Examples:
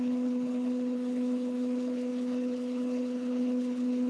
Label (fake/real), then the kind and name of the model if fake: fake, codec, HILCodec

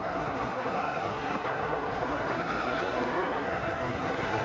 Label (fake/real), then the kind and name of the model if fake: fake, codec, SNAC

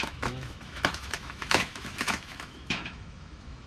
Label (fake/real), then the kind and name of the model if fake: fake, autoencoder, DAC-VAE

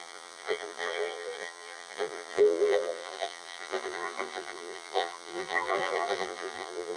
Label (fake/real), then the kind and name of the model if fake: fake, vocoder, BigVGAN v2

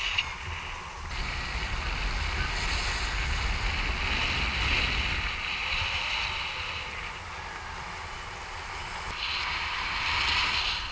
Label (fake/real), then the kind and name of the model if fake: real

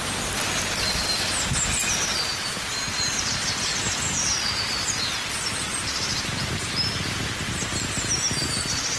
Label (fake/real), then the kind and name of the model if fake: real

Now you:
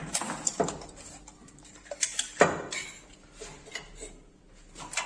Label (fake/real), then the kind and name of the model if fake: real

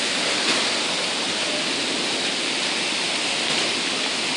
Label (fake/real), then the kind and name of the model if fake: real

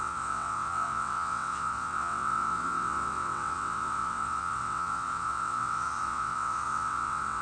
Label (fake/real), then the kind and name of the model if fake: fake, vocoder, WaveNeXt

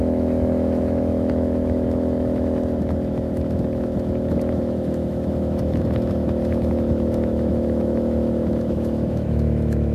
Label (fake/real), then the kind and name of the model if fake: fake, autoencoder, DAC-VAE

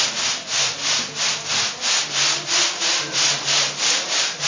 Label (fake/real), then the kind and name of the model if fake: real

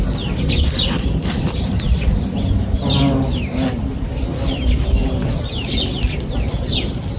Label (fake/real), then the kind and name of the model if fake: real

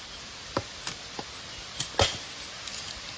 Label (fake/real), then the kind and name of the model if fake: real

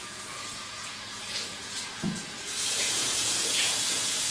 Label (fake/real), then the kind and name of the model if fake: fake, vocoder, Vocos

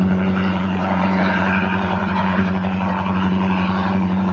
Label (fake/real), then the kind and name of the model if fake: fake, vocoder, Vocos